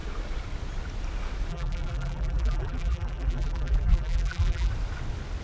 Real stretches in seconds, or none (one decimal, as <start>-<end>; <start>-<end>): 0.0-1.5; 4.7-5.4